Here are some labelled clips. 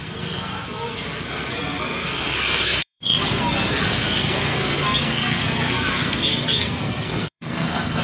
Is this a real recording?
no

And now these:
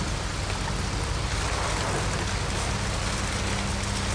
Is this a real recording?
yes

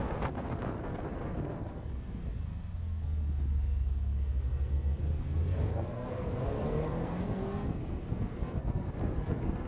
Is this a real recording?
no